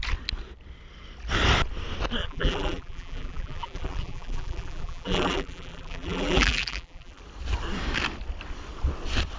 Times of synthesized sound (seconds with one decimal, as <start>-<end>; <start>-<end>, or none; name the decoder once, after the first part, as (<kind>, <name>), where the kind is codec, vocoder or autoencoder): 2.2-7.2 (vocoder, BigVGAN v2)